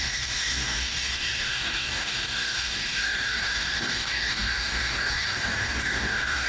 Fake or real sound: fake